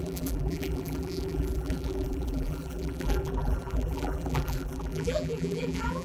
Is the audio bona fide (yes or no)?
no